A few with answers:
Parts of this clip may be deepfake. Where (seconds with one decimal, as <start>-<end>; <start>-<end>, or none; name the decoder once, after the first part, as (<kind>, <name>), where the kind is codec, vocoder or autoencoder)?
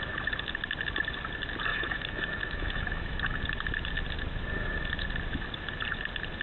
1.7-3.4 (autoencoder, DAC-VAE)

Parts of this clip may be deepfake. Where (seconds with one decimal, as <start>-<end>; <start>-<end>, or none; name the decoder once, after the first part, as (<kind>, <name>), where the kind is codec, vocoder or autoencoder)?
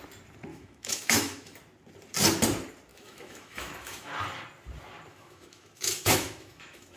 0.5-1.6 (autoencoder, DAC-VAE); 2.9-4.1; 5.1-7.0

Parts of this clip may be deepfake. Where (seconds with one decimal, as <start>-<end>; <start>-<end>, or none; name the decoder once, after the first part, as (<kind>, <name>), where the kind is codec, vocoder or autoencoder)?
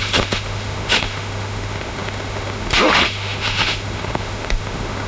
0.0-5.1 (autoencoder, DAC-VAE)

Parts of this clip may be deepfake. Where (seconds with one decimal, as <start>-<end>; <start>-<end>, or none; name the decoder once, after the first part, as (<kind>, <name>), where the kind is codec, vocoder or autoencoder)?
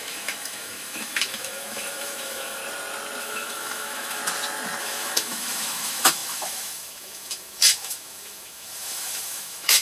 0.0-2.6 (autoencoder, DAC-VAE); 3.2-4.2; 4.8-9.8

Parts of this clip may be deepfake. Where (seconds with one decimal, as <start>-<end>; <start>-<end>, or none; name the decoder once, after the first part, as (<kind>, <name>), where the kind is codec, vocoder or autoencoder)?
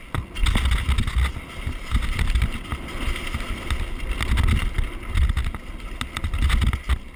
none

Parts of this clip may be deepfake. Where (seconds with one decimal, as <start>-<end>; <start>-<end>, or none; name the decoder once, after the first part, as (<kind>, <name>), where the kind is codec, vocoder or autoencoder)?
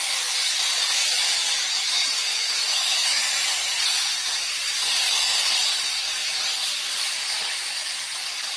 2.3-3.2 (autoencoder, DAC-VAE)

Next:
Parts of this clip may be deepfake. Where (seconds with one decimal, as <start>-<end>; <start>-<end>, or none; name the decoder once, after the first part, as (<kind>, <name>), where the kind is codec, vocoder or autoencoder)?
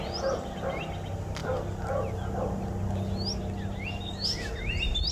none